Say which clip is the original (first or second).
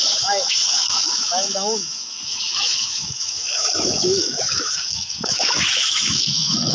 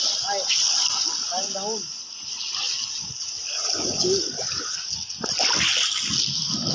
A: second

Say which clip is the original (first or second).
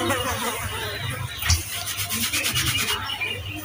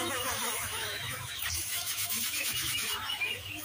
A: first